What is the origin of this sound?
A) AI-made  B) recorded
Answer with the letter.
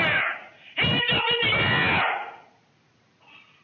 B